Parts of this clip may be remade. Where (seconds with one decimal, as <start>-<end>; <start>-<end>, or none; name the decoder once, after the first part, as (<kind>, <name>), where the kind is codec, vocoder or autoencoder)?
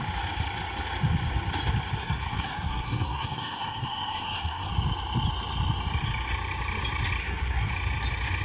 2.0-4.7 (codec, SNAC); 7.2-7.7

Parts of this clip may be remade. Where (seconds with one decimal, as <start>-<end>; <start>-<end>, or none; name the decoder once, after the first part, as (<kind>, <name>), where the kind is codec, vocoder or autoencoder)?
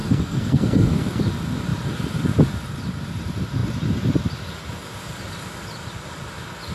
0.0-1.2 (codec, SNAC)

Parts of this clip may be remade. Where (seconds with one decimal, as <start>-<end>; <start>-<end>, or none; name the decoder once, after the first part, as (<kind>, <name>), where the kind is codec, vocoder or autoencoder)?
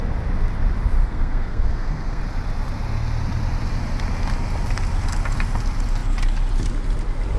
1.0-2.2 (codec, SNAC)